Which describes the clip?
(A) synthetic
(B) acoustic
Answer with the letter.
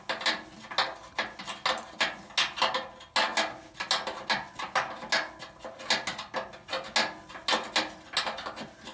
B